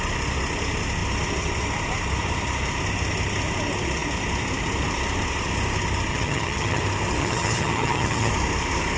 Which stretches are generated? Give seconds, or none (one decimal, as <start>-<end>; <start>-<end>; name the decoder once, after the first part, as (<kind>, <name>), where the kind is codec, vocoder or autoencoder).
6.1-6.8 (vocoder, HiFi-GAN); 7.2-8.3